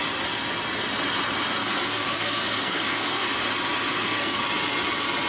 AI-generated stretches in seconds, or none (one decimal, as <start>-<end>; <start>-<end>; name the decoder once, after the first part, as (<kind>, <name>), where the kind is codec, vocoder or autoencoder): 1.6-3.3 (codec, SNAC); 3.9-4.4